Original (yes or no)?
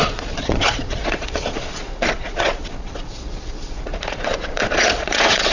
no